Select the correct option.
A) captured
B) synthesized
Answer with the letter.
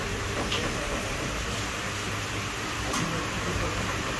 B